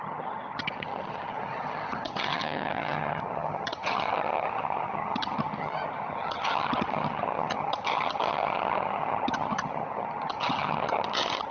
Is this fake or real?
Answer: fake